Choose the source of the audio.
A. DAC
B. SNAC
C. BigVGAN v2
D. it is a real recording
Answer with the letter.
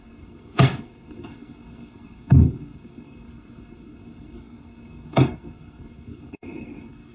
B